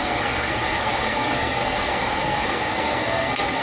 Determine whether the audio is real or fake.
fake